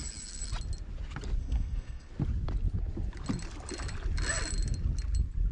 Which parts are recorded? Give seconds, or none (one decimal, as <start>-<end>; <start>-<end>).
0.0-1.4; 2.1-5.5